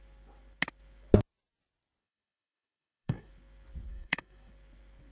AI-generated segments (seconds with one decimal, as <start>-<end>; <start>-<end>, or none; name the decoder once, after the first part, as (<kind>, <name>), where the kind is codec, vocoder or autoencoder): 2.0-3.3 (autoencoder, DAC-VAE); 3.9-4.5